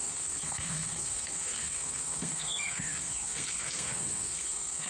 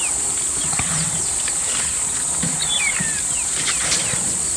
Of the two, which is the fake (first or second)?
first